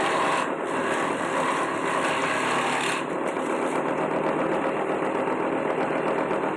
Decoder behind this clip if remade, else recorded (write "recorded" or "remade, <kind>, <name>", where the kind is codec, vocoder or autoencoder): recorded